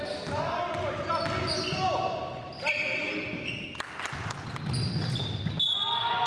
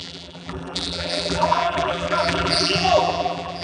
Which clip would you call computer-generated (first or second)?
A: second